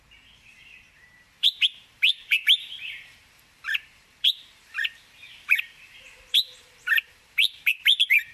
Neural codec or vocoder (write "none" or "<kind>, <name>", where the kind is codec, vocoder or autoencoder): vocoder, BigVGAN v2